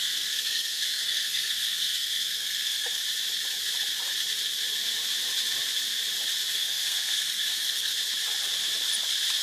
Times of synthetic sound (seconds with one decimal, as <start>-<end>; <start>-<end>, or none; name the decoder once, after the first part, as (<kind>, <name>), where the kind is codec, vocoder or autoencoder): 0.0-3.0 (codec, SNAC); 6.5-7.9